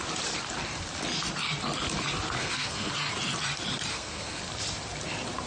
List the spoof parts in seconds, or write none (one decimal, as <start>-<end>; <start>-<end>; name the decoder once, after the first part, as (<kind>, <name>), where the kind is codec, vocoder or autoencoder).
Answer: 2.4-2.9 (codec, SNAC); 3.9-4.4